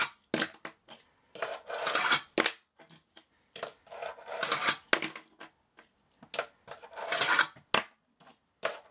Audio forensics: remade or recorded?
recorded